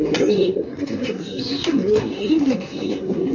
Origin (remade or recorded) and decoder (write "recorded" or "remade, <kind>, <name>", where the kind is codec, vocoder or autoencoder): remade, codec, SNAC